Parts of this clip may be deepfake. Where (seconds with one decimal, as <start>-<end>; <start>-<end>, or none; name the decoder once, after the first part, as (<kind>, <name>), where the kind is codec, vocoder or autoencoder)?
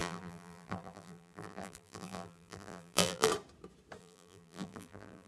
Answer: 0.0-3.3 (vocoder, BigVGAN v2); 4.0-5.3